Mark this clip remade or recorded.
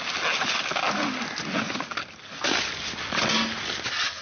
recorded